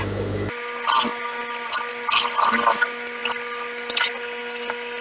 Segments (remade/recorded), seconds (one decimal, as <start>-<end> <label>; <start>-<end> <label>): 0.0-5.0 recorded